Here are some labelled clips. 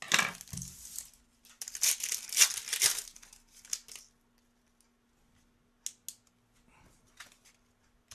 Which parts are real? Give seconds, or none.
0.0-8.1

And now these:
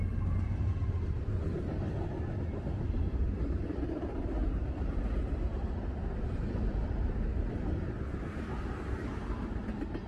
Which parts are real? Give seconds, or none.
0.0-4.4; 4.9-10.1

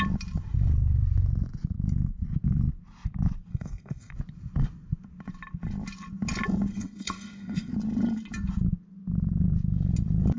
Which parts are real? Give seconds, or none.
0.0-3.5; 4.1-6.7; 7.7-10.4

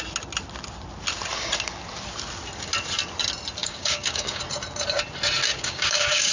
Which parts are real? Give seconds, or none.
0.0-3.6; 4.4-5.5